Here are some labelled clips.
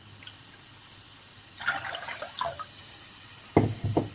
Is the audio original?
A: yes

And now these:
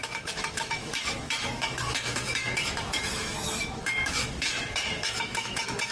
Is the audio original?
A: no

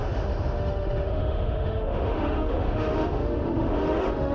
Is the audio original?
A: no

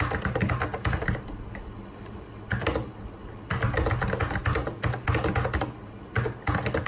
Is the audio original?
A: yes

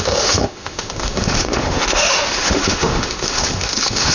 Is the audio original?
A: no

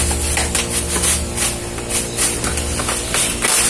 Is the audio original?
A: yes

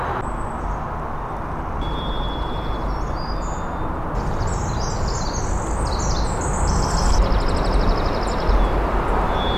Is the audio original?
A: yes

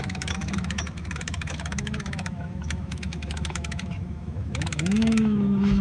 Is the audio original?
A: no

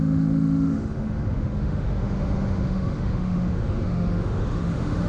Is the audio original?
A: no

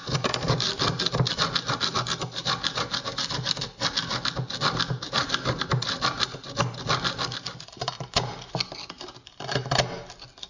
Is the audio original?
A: yes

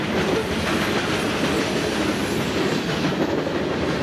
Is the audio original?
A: yes